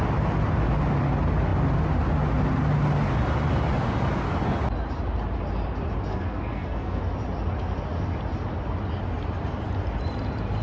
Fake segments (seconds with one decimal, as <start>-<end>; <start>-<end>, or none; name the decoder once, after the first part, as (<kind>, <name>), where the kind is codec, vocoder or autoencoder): 6.1-7.0 (codec, SNAC)